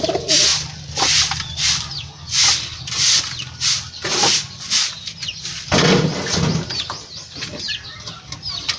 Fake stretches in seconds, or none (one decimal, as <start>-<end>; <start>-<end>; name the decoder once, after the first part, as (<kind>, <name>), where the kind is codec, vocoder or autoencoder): 0.5-3.2 (vocoder, BigVGAN v2)